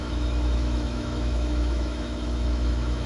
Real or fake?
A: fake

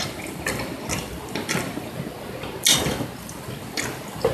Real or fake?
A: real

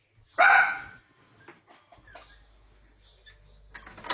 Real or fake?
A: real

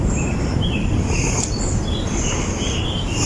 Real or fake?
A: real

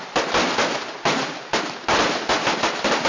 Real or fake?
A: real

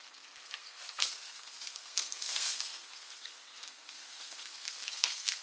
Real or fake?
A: fake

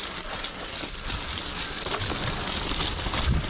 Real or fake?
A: real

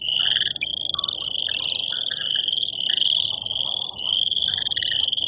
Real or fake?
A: real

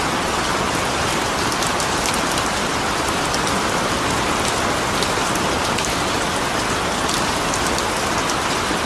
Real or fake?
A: real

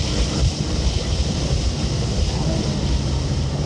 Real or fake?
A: real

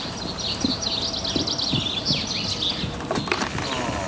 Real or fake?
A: real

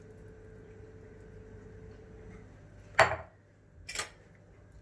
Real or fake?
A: real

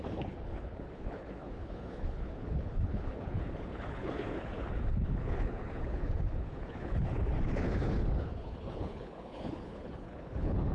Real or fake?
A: fake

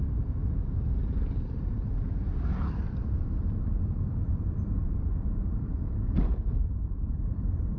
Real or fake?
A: fake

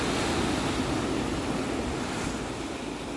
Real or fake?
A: real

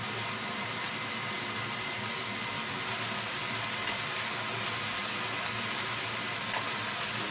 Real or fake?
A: real